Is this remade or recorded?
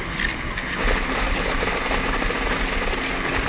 recorded